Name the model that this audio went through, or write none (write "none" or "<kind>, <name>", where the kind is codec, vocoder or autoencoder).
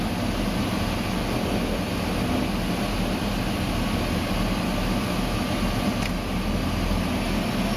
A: none